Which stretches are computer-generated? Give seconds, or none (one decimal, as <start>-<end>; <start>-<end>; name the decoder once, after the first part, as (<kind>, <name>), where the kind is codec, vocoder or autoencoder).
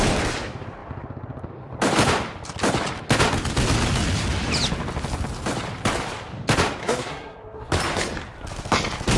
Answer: 6.8-7.7 (codec, SNAC)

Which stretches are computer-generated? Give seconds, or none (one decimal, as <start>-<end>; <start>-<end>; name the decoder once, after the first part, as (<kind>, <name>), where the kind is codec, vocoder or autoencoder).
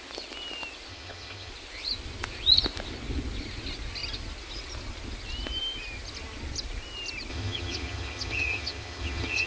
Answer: 0.9-1.5 (vocoder, HiFi-GAN); 7.3-9.5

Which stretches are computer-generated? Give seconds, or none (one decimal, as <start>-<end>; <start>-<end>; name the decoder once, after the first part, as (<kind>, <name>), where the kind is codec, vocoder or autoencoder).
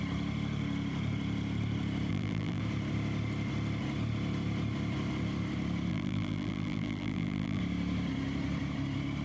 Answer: 2.1-2.6 (vocoder, BigVGAN v2); 5.9-7.6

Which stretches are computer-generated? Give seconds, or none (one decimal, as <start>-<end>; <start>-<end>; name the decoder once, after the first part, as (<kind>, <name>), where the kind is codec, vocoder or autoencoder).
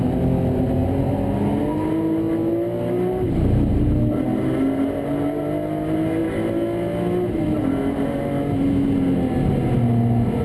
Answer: none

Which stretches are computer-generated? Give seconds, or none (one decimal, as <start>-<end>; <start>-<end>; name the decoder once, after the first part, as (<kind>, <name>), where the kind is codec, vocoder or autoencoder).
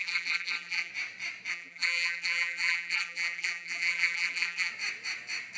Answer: 0.0-0.9 (vocoder, BigVGAN v2); 1.5-4.7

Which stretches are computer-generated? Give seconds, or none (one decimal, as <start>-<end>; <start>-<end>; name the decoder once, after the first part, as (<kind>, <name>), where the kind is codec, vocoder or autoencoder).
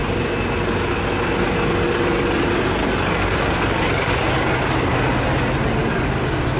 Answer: 2.8-4.2 (codec, DAC); 5.8-6.6